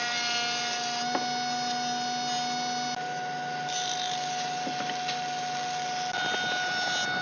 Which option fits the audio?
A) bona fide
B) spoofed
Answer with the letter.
A